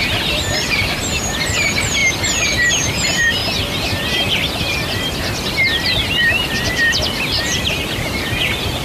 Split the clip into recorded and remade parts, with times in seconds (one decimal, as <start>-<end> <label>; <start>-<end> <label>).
0.0-2.0 remade; 2.0-2.7 recorded; 2.7-3.4 remade; 3.4-7.4 recorded; 7.4-8.8 remade